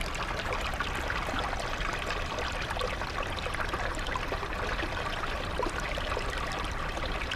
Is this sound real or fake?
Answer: real